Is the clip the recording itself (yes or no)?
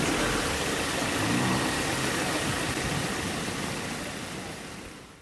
yes